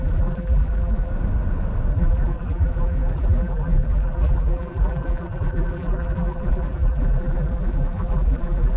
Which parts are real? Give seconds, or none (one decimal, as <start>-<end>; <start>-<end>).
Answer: 1.1-1.9